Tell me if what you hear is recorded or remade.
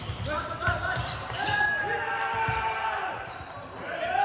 remade